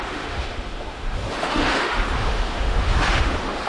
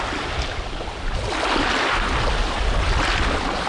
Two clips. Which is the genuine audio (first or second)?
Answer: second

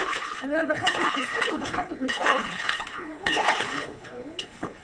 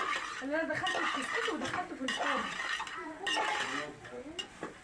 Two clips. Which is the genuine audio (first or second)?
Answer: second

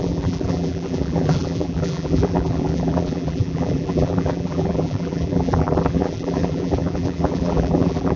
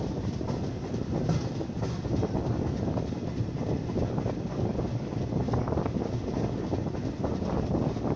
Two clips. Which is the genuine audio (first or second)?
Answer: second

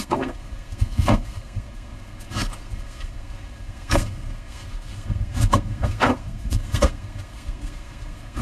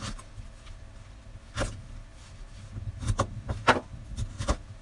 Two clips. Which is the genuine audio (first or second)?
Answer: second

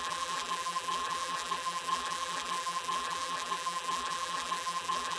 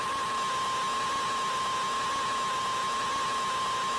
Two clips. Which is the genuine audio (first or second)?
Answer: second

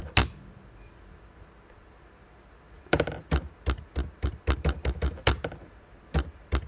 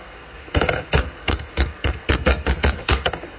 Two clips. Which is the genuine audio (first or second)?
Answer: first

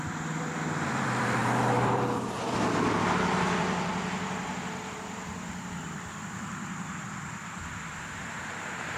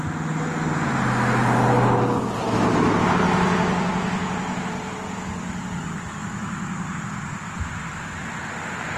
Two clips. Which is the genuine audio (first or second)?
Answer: second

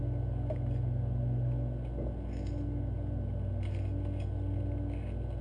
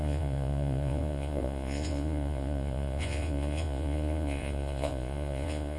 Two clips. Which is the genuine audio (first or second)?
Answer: first